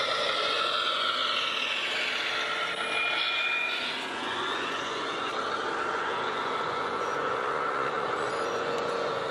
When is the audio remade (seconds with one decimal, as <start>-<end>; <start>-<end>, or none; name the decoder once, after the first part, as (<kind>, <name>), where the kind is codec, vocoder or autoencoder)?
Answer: 0.0-1.2 (vocoder, Vocos); 3.2-5.3; 5.9-9.3